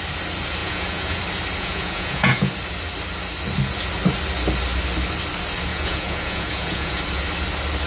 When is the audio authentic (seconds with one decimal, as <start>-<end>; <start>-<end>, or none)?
0.0-0.6; 1.2-1.6; 2.5-5.7; 7.0-7.9